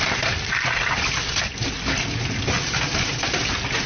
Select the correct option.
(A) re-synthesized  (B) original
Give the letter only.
B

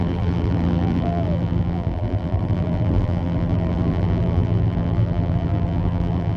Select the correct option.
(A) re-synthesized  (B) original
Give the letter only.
A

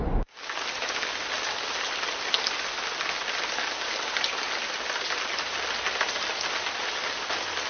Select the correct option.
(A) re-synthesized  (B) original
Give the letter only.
B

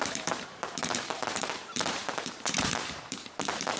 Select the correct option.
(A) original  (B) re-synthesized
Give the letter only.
B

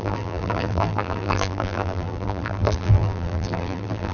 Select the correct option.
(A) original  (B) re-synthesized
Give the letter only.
B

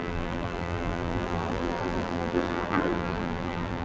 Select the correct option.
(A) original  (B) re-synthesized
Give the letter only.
B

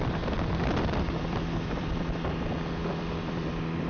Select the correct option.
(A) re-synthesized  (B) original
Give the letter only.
A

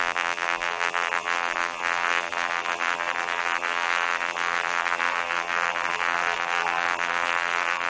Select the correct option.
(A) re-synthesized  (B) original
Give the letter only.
A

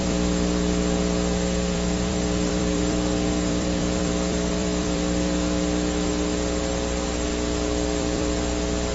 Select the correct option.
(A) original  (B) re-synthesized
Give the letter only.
B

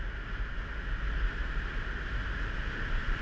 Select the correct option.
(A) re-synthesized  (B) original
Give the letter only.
B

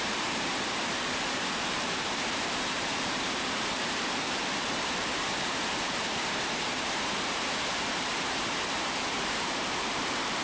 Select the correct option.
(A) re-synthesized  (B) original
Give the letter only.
A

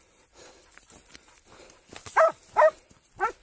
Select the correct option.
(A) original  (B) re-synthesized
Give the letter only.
A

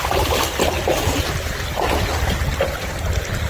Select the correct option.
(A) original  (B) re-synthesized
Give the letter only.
A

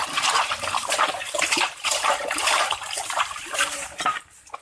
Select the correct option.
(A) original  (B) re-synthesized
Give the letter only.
B